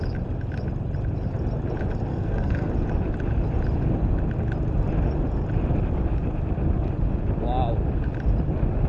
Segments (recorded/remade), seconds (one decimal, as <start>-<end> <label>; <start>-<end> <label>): 0.0-2.1 recorded; 2.1-2.7 remade; 2.7-8.9 recorded